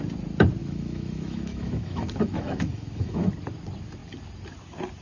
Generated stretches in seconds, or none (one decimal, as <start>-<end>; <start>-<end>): 0.6-3.3